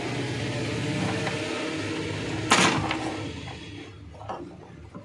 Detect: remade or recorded recorded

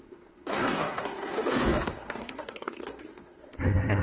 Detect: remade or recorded remade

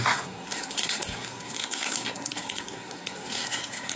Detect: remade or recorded remade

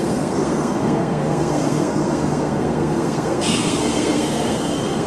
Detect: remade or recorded remade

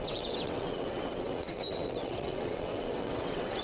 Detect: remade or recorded remade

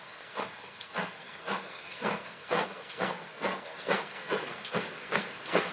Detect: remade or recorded remade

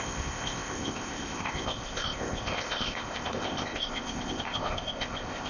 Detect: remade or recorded remade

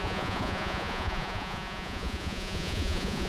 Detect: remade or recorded remade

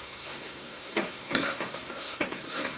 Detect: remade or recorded remade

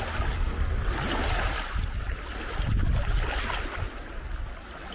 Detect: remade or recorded recorded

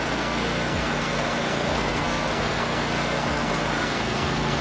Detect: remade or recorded remade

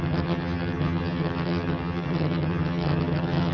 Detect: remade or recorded remade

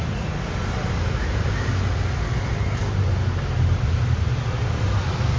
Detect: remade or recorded recorded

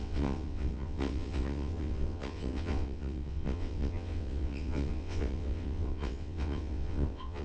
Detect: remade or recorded remade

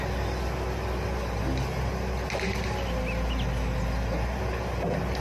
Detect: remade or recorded recorded